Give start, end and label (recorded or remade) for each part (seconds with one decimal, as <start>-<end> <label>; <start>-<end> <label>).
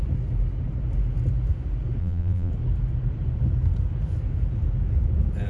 0.0-2.0 recorded; 2.0-2.5 remade; 2.5-5.5 recorded